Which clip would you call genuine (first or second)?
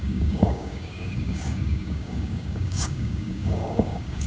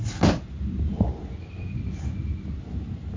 second